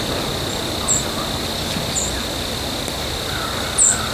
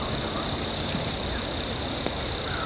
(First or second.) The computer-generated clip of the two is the second